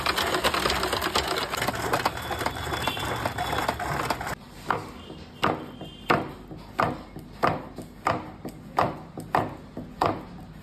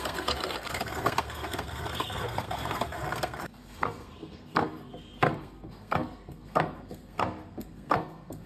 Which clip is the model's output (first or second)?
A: second